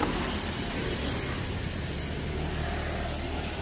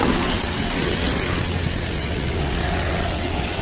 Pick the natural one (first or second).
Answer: first